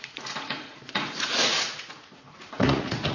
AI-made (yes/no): yes